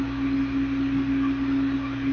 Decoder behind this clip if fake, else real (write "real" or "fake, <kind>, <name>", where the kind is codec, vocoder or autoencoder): real